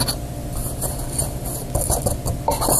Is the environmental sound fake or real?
real